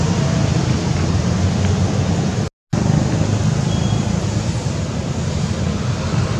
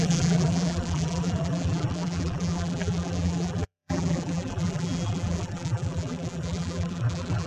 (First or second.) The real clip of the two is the first